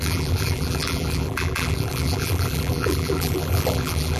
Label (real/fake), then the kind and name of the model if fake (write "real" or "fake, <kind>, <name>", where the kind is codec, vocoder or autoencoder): fake, vocoder, BigVGAN v2